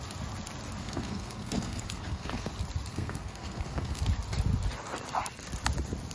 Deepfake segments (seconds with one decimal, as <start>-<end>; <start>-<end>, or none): 0.8-2.5; 2.9-4.0